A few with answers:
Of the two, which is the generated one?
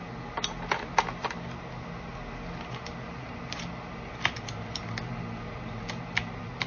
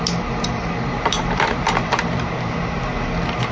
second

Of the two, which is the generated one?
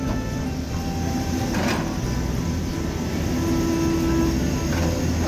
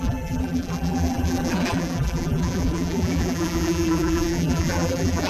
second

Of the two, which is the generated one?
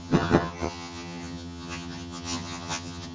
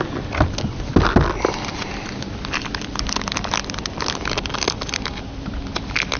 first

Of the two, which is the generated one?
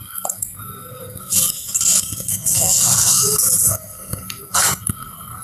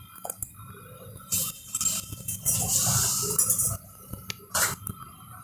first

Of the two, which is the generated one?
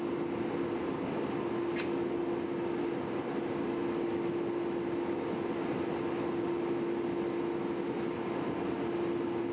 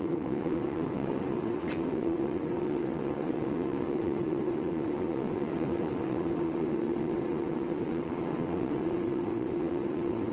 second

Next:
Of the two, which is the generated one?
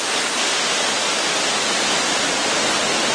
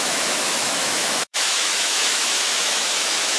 second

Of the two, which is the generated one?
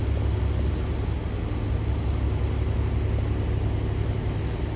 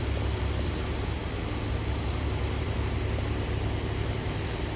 second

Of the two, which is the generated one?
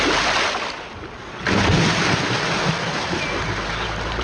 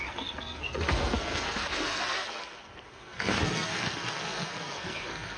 second